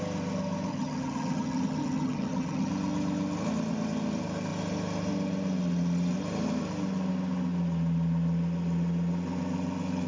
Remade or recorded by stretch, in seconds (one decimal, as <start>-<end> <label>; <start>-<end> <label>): 0.0-0.7 recorded; 0.7-2.7 remade; 2.7-10.1 recorded